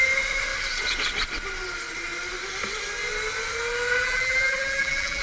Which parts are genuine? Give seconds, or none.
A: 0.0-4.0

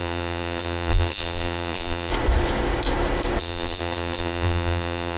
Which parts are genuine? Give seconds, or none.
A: 2.1-3.4

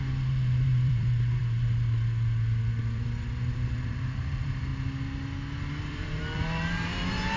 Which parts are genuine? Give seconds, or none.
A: 1.4-2.8; 4.7-5.7

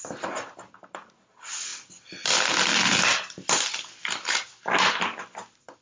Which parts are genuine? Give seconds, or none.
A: 0.0-5.8